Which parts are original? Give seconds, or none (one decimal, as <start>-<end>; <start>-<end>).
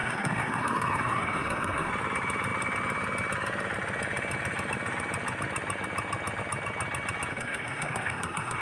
1.9-7.3